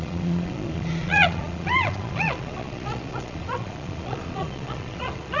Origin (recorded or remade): remade